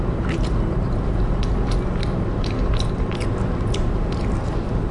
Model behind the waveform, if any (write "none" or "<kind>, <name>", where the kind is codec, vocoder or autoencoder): none